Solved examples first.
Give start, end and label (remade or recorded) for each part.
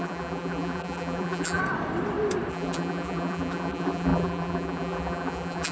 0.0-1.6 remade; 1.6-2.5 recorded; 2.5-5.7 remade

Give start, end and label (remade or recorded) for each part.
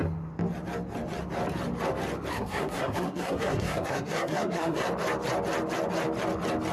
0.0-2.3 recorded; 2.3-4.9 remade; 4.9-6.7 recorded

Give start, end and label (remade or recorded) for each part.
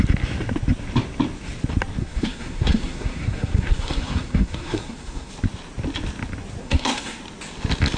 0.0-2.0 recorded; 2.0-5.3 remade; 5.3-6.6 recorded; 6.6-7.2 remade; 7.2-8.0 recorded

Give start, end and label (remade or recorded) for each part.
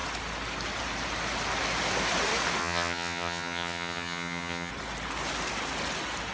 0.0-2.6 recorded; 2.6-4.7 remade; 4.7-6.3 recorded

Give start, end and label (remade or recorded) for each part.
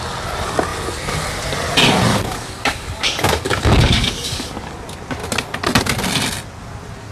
0.0-2.1 recorded; 2.1-4.7 remade; 4.7-7.1 recorded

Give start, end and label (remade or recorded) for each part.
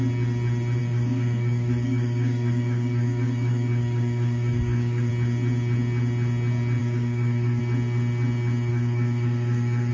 0.0-0.8 recorded; 0.8-5.1 remade; 5.1-6.8 recorded; 6.8-7.6 remade; 7.6-8.7 recorded; 8.7-9.9 remade